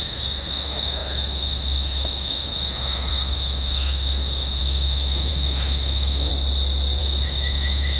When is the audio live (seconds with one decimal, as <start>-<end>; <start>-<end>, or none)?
6.3-7.0